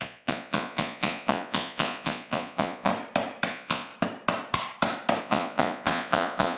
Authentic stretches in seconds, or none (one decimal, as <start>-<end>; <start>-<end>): 2.9-3.5; 3.9-5.2